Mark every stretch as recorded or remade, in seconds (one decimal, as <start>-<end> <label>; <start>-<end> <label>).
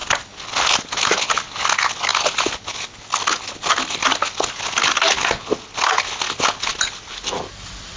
0.0-6.7 recorded; 6.7-8.0 remade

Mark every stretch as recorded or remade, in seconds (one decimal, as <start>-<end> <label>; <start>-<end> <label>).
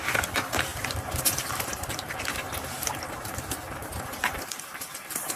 0.0-0.7 recorded; 0.7-2.2 remade; 2.2-3.8 recorded; 3.8-5.4 remade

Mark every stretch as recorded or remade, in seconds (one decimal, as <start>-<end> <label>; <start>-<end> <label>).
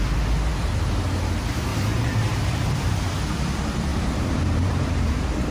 0.0-1.7 recorded; 1.7-3.1 remade; 3.1-3.9 recorded; 3.9-5.1 remade; 5.1-5.5 recorded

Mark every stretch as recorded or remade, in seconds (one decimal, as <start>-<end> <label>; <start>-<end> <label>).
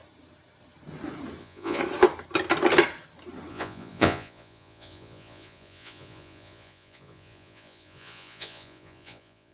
0.0-1.4 recorded; 1.4-1.8 remade; 1.8-3.5 recorded; 3.5-9.5 remade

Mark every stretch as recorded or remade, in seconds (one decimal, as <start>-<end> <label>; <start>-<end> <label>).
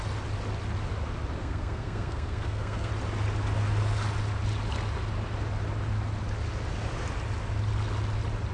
0.0-1.4 recorded; 1.4-2.9 remade; 2.9-8.5 recorded